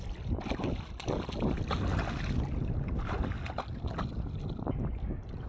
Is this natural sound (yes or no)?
yes